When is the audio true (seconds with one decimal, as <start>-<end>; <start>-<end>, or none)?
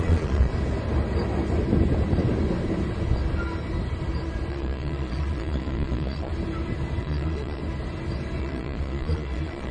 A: 0.5-4.5; 6.3-7.0; 7.6-8.4